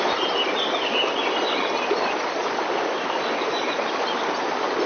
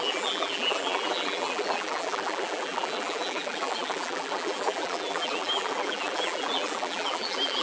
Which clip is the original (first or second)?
first